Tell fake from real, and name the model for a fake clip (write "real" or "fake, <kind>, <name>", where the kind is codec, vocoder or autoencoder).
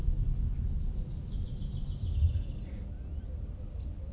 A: real